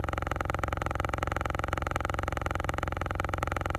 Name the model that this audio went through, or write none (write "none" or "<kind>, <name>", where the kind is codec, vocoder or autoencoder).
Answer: none